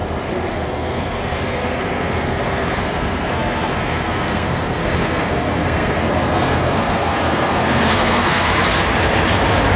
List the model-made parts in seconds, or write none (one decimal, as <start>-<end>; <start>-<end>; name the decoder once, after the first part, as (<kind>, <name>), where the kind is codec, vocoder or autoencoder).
0.5-8.5 (codec, SNAC)

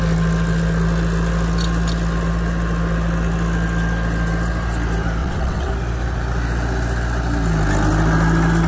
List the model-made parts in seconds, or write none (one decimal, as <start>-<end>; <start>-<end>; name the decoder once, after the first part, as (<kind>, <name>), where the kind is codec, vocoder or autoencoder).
5.2-5.7 (vocoder, WaveNeXt)

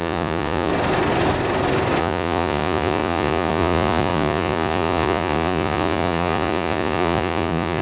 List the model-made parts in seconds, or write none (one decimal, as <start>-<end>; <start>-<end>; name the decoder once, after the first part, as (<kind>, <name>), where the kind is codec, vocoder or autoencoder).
0.0-0.7 (vocoder, Vocos); 2.0-7.8

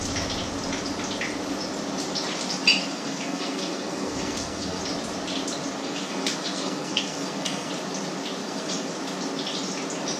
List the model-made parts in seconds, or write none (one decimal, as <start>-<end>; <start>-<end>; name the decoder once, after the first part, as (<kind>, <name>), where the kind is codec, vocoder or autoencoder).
2.8-4.8 (codec, SNAC); 5.8-7.7; 8.4-8.9

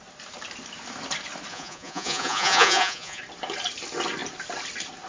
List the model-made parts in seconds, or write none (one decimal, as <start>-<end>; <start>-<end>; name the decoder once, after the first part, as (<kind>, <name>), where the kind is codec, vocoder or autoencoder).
1.5-3.2 (vocoder, Vocos)